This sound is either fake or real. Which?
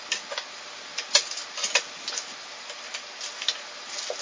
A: real